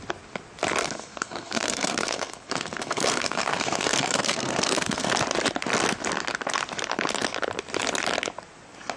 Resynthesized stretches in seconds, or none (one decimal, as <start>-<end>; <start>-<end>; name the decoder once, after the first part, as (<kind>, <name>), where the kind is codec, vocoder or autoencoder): 0.8-5.1 (codec, SNAC)